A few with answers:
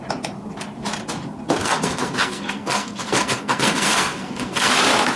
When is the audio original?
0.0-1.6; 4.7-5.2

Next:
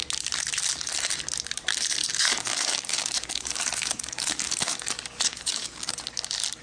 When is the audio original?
0.0-2.0; 6.0-6.6